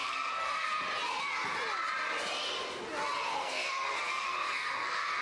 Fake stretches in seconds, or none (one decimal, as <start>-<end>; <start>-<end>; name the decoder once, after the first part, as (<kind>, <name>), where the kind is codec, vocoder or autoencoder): 0.0-0.8 (codec, SNAC); 3.3-5.2